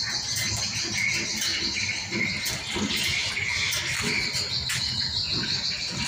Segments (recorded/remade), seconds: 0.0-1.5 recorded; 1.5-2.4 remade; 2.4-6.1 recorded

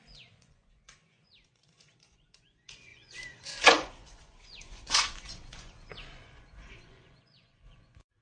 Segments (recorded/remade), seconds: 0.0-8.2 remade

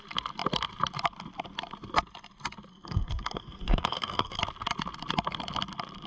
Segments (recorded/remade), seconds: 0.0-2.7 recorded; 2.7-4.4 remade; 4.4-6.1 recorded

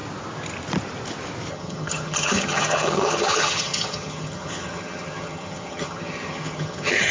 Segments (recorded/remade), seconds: 0.0-1.5 recorded; 1.5-7.1 remade

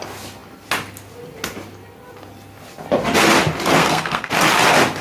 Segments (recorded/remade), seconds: 0.0-3.8 recorded; 3.8-4.3 remade; 4.3-5.0 recorded

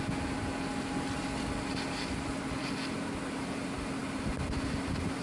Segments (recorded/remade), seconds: 0.0-0.7 recorded; 0.7-2.4 remade; 2.4-5.2 recorded